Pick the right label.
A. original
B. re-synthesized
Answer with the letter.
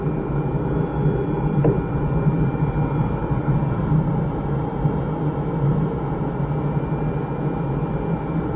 A